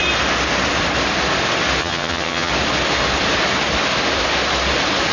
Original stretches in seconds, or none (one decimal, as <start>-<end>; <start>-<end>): 0.0-1.8; 2.5-5.1